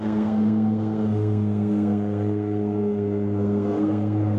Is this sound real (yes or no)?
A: no